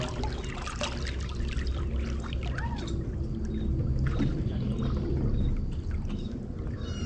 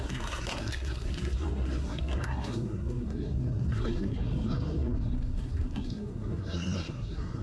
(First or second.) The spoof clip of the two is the second